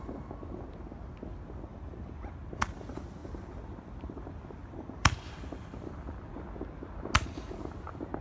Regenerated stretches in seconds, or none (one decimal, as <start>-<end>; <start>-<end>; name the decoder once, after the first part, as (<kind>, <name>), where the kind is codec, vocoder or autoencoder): 1.7-2.3 (vocoder, BigVGAN v2); 4.6-5.2